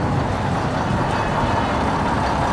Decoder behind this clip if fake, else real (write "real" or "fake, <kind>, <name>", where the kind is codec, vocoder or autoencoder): real